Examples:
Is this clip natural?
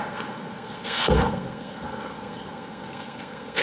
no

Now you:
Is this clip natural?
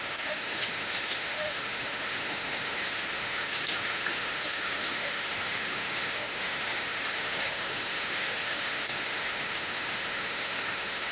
no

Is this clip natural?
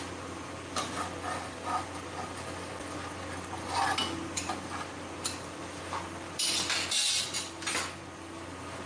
yes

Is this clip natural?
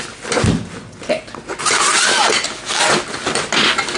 yes